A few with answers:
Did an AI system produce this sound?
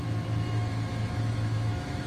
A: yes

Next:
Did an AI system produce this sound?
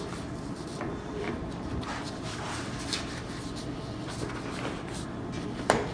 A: yes